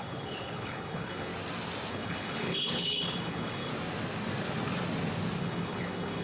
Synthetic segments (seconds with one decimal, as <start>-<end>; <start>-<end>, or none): 0.0-1.3; 1.9-3.7; 5.4-6.2